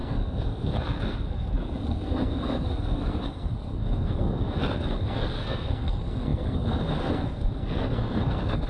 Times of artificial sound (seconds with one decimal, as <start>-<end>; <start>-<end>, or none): 0.0-8.7